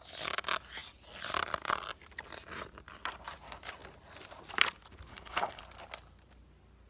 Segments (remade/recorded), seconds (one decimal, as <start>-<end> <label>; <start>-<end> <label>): 0.0-5.1 recorded; 5.1-5.6 remade; 5.6-6.9 recorded